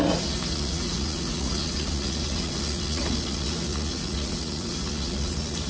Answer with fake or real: fake